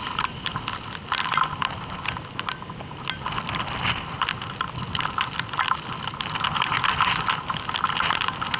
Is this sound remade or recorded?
recorded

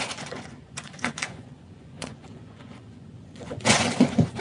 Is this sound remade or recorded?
remade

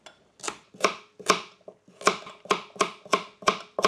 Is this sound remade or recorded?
recorded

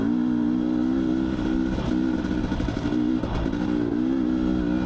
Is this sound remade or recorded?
recorded